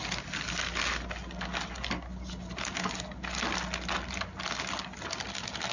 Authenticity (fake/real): real